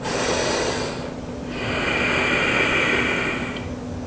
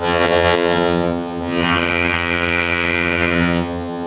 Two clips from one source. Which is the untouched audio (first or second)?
first